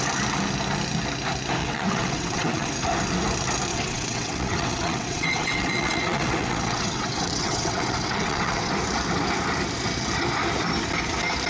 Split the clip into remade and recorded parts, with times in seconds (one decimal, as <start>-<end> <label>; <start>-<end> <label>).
0.0-1.6 recorded; 1.6-2.7 remade; 2.7-3.7 recorded; 3.7-8.7 remade; 8.7-11.5 recorded

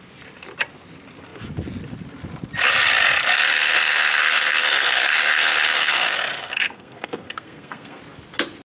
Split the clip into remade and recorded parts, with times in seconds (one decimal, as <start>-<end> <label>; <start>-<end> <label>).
0.0-3.3 recorded; 3.3-8.0 remade; 8.0-8.7 recorded